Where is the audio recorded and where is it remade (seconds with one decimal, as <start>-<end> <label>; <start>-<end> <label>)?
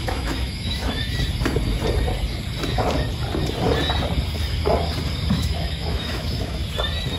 0.0-1.0 remade; 1.0-5.3 recorded; 5.3-6.6 remade; 6.6-7.2 recorded